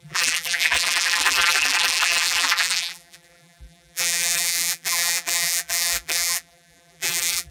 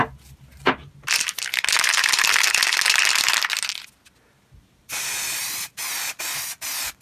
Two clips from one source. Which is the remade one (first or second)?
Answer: first